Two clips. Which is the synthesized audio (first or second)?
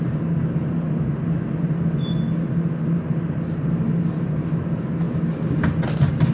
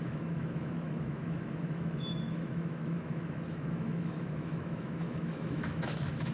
second